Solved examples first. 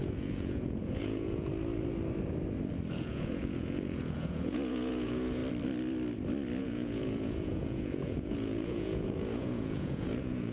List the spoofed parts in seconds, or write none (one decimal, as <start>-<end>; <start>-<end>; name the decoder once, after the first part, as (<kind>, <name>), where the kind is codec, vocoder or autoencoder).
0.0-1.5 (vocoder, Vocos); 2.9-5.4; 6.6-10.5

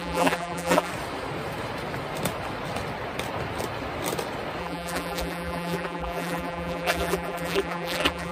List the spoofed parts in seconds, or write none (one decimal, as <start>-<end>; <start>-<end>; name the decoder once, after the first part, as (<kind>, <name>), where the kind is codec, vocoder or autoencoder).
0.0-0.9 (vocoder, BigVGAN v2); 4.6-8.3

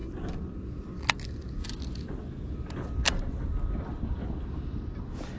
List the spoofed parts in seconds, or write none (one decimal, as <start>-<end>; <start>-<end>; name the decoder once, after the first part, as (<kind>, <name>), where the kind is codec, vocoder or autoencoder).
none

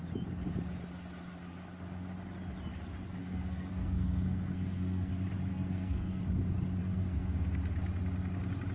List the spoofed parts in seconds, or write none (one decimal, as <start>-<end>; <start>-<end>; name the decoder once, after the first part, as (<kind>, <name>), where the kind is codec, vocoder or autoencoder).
3.2-5.1 (codec, SNAC); 5.5-6.2; 6.8-7.5